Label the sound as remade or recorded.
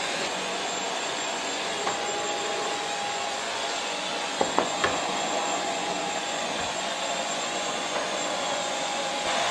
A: remade